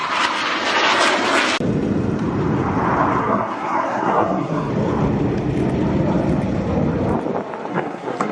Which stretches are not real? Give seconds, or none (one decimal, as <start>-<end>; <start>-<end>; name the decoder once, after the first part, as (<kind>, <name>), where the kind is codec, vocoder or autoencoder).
3.2-4.7 (codec, SNAC); 7.7-8.3